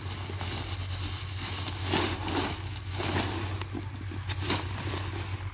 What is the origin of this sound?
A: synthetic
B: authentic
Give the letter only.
B